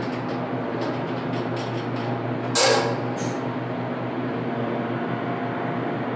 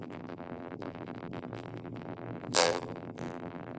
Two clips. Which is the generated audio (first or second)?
second